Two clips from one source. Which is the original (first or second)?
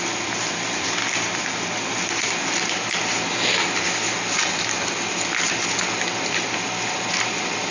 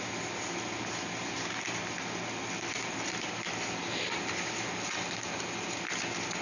first